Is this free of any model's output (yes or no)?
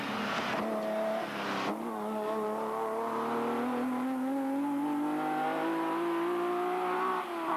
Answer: yes